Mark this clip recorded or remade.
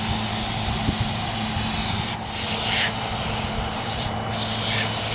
recorded